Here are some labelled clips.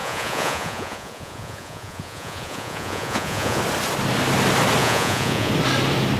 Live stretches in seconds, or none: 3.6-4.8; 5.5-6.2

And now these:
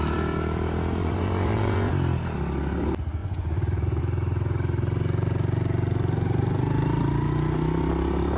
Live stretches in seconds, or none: 0.0-1.0; 1.9-3.2; 4.0-8.4

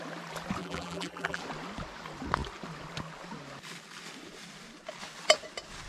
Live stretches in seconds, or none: 0.0-0.6; 1.4-5.9

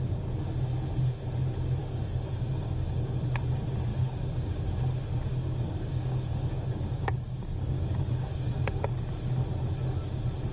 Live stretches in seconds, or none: 0.0-1.8; 3.2-3.9; 4.7-5.3; 8.9-10.5

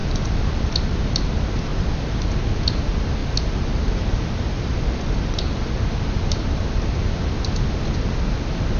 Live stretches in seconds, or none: 0.8-3.2; 5.8-8.8

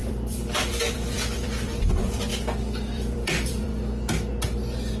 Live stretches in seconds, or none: 2.3-2.9; 3.7-5.0

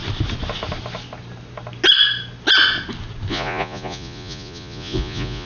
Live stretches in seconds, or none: 0.0-3.3